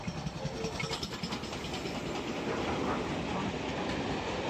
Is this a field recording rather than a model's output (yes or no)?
yes